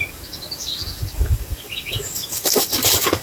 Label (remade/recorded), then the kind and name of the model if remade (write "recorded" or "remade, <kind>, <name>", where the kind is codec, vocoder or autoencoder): remade, codec, DAC